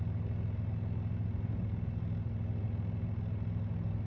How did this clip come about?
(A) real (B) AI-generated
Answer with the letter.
A